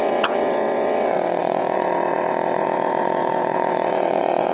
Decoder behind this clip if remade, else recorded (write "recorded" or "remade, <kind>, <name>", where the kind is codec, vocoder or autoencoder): remade, vocoder, WaveNeXt